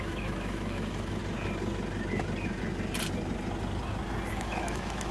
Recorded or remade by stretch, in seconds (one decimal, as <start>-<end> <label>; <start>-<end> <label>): 0.0-1.2 remade; 1.2-4.3 recorded; 4.3-5.1 remade

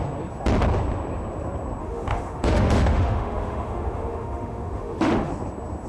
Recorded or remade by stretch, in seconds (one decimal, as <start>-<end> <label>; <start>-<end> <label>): 0.0-1.8 recorded; 1.8-5.3 remade; 5.3-5.9 recorded